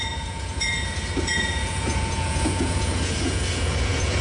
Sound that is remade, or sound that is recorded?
remade